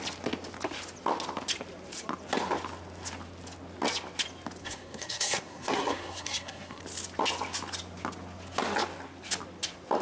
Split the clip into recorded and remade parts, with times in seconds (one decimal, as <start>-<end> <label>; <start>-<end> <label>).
0.0-4.6 recorded; 4.6-6.8 remade; 6.8-10.0 recorded